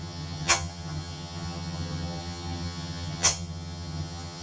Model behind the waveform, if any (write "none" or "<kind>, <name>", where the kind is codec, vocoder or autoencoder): vocoder, HiFi-GAN